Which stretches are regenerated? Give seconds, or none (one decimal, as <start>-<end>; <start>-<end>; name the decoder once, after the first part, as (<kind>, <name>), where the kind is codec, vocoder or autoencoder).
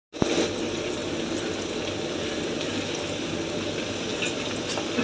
none